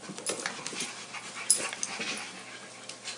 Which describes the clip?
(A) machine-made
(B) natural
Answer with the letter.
B